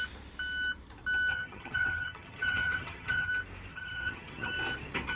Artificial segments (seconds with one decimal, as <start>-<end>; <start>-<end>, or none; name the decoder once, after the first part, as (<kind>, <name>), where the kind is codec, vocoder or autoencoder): 1.3-3.3 (vocoder, HiFi-GAN); 3.7-4.5

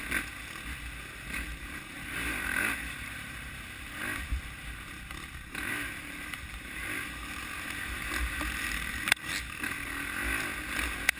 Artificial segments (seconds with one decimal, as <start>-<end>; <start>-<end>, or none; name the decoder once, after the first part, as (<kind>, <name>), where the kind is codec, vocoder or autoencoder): 1.5-4.0 (vocoder, BigVGAN v2); 5.7-9.3

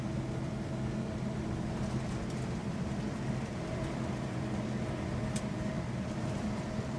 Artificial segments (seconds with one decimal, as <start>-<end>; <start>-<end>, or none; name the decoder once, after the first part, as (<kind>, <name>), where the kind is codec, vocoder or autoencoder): 2.6-7.0 (vocoder, BigVGAN v2)